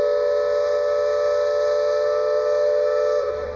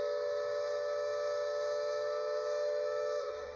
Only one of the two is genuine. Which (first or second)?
first